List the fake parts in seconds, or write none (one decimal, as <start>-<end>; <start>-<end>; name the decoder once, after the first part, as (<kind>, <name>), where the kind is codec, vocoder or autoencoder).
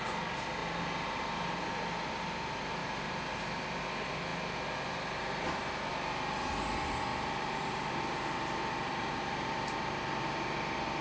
0.6-1.6 (vocoder, BigVGAN v2); 2.8-3.4; 7.1-9.3